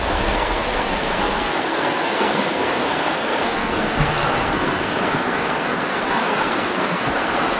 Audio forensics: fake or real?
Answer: fake